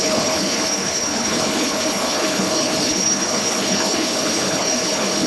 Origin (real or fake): fake